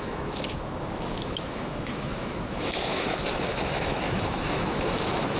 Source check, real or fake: fake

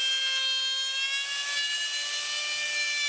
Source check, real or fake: real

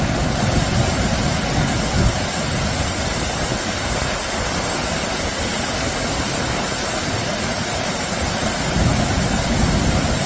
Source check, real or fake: real